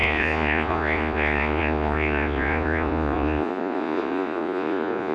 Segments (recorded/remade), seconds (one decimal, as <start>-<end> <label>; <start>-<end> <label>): 0.0-5.1 remade

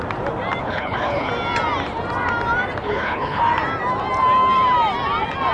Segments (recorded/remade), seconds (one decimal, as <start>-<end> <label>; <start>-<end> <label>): 0.0-0.6 recorded; 0.6-1.3 remade; 1.3-2.8 recorded; 2.8-3.4 remade; 3.4-5.5 recorded

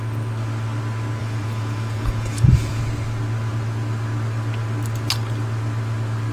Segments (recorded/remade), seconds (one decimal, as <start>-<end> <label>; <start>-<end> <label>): 0.0-1.2 recorded; 1.2-2.8 remade; 2.8-6.3 recorded

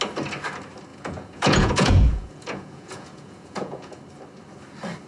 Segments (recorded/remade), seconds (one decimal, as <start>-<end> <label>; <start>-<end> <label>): 0.0-0.9 recorded; 0.9-4.0 remade; 4.0-5.1 recorded

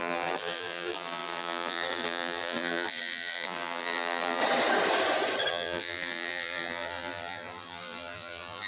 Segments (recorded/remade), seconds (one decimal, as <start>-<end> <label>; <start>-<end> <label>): 0.0-4.4 remade; 4.4-5.5 recorded; 5.5-8.7 remade